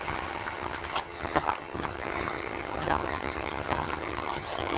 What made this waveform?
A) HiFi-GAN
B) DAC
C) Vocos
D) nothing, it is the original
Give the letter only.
A